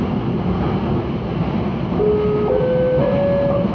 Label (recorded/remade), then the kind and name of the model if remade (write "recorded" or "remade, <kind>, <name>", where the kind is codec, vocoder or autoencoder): recorded